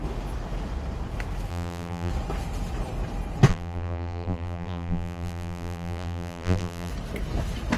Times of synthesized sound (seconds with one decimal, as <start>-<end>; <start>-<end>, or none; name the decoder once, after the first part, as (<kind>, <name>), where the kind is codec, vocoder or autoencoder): 1.5-2.1 (vocoder, BigVGAN v2); 3.5-6.9